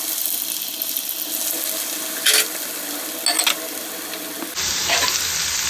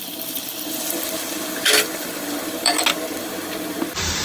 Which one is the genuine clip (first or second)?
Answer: first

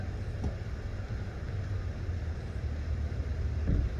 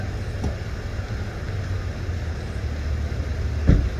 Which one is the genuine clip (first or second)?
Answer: second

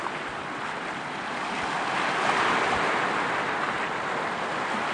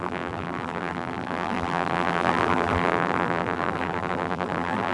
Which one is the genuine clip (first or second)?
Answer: first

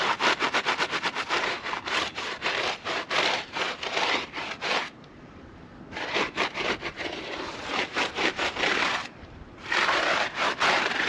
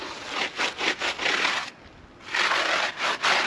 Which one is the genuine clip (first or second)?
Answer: second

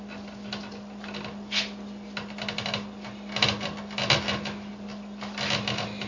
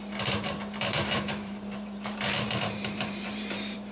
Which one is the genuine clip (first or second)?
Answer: first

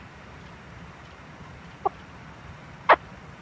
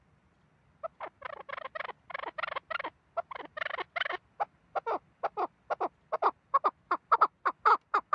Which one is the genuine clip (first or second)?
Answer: second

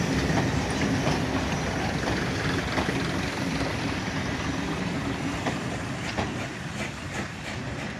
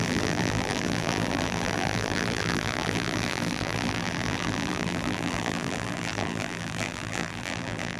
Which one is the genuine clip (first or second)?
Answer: first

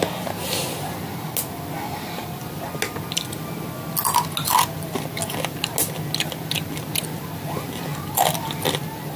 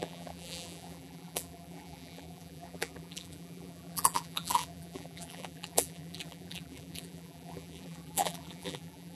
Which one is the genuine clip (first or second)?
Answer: first